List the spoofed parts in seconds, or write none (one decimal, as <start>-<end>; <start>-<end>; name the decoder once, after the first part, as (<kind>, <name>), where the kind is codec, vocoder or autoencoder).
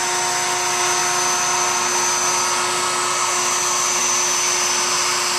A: none